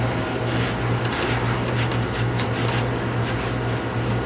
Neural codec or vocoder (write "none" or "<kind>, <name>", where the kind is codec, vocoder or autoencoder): none